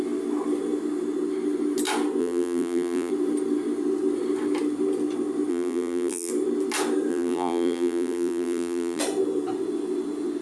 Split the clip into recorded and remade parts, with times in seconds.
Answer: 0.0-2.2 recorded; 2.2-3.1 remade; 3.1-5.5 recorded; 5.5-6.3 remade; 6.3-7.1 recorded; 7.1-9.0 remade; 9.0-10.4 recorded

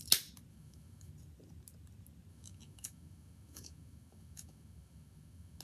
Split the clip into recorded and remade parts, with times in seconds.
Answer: 0.0-0.5 recorded; 0.5-1.1 remade; 1.1-2.3 recorded; 2.3-5.6 remade

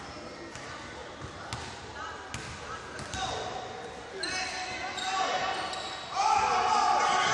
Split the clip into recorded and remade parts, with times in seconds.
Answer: 0.0-7.3 recorded

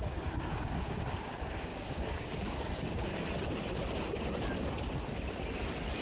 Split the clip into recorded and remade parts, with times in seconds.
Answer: 0.0-3.1 remade; 3.1-6.0 recorded

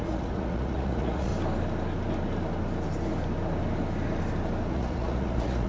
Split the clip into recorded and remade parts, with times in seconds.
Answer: 0.0-1.3 remade; 1.3-4.7 recorded; 4.7-5.7 remade

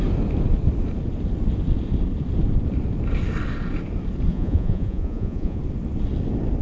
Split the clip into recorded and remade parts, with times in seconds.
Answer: 0.0-4.3 recorded; 4.3-5.6 remade; 5.6-6.6 recorded

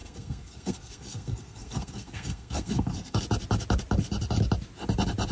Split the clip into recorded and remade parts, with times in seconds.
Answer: 0.0-3.2 remade; 3.2-5.3 recorded

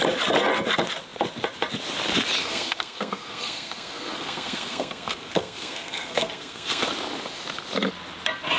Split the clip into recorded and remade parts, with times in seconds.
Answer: 0.0-2.4 recorded; 2.4-6.9 remade; 6.9-8.6 recorded